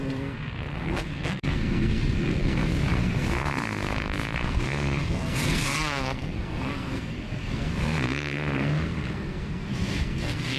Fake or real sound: fake